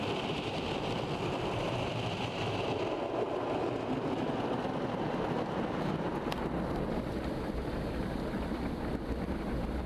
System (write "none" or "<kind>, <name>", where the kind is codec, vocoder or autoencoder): none